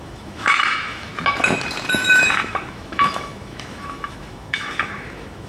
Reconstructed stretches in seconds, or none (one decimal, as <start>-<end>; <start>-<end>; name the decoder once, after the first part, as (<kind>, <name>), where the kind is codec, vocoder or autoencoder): 0.0-1.1 (autoencoder, DAC-VAE); 1.9-5.5